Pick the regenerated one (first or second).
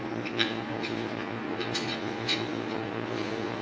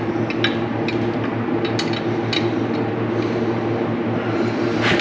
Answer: first